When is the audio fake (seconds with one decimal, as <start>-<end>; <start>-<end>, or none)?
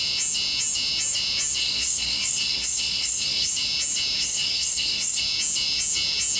1.6-3.5; 4.2-5.2